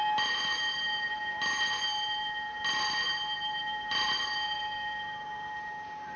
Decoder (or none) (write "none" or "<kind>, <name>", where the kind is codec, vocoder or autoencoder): none